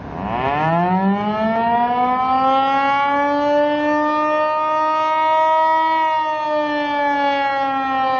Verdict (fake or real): real